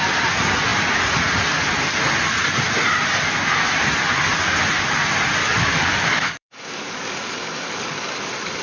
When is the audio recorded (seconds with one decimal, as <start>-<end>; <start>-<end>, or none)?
0.0-5.4